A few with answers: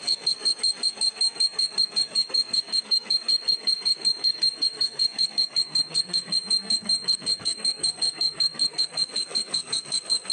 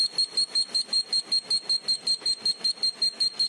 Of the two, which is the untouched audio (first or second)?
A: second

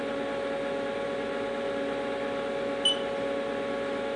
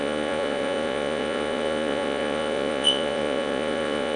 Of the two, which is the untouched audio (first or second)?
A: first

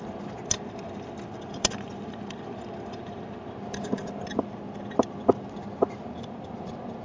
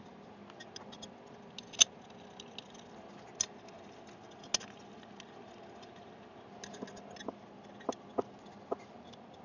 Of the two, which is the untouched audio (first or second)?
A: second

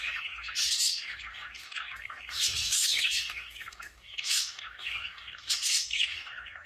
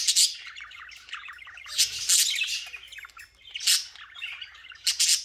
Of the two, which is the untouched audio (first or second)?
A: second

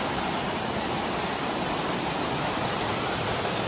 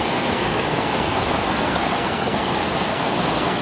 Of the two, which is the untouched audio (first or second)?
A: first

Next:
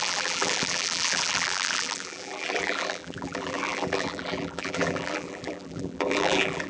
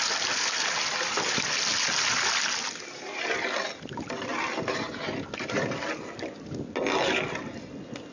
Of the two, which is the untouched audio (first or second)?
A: second